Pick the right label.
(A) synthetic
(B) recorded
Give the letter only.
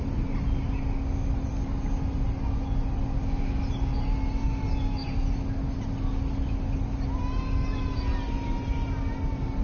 B